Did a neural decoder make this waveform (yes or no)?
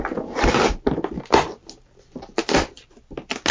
no